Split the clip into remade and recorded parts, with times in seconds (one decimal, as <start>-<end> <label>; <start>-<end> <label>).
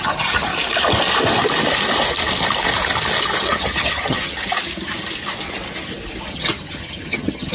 0.0-0.5 remade; 0.5-3.4 recorded; 3.4-4.5 remade; 4.5-6.3 recorded; 6.3-7.5 remade